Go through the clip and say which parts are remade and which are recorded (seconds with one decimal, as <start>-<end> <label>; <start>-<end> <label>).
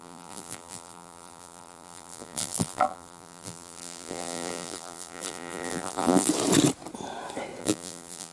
0.0-6.3 remade; 6.3-7.6 recorded; 7.6-8.3 remade